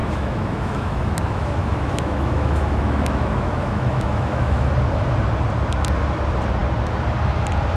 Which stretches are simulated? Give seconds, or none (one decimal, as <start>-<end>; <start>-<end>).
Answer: 0.0-4.7